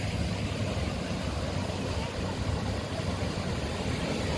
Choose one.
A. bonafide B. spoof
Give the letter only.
A